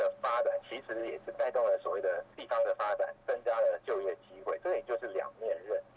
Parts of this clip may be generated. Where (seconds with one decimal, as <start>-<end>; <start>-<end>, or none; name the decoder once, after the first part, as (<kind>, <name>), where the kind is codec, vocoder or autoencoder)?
none